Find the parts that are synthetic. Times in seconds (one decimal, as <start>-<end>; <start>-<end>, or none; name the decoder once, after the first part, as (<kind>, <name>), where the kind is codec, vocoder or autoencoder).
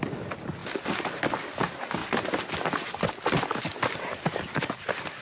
none